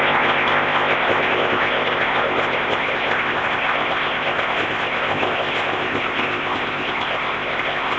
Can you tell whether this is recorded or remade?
remade